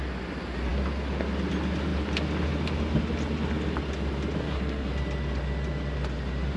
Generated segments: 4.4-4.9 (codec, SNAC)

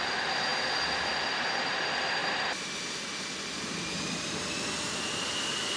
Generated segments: none

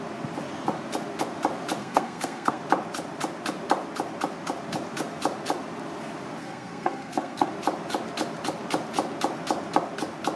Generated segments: 1.8-2.6 (codec, SNAC); 6.4-7.5